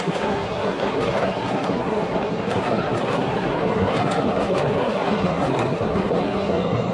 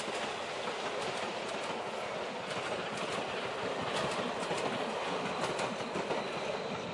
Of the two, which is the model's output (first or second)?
first